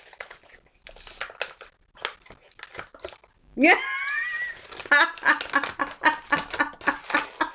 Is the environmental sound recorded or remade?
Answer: recorded